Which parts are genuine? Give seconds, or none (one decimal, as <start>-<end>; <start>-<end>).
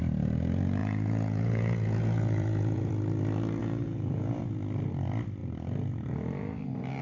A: 0.0-0.8; 2.9-3.6; 4.4-7.0